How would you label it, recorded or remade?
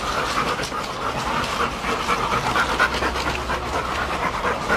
recorded